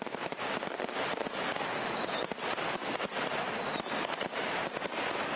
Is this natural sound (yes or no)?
yes